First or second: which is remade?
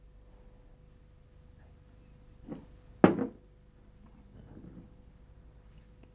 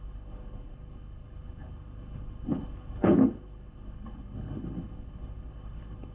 second